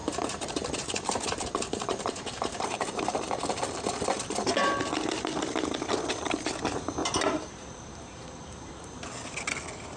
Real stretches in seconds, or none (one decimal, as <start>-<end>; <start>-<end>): 3.6-7.0; 9.0-10.0